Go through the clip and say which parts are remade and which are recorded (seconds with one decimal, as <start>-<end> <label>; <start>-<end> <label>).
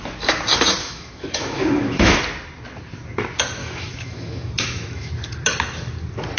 0.0-0.8 recorded; 0.8-2.2 remade; 2.2-3.6 recorded; 3.6-5.1 remade; 5.1-6.4 recorded